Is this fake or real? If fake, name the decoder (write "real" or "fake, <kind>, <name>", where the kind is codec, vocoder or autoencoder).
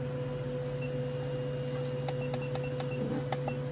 real